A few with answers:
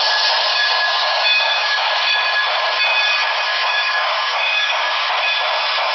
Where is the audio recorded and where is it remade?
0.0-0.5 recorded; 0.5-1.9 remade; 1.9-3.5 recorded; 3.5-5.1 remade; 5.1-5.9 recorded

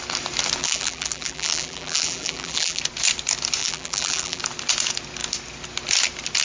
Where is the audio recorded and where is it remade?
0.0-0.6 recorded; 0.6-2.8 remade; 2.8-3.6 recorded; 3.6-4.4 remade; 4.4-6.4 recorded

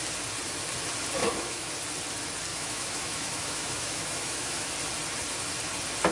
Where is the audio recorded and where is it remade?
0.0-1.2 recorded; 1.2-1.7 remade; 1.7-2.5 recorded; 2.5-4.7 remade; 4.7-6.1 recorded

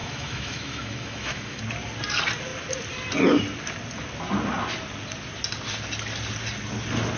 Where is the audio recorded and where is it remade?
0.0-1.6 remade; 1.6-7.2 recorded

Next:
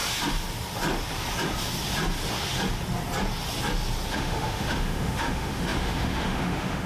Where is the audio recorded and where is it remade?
0.0-4.1 recorded; 4.1-6.9 remade

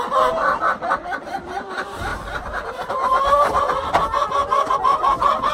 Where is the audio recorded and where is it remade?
0.0-0.4 recorded; 0.4-1.5 remade; 1.5-5.5 recorded

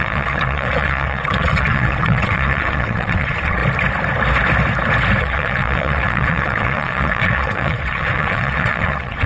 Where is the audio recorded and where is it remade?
0.0-3.6 remade; 3.6-5.2 recorded; 5.2-9.3 remade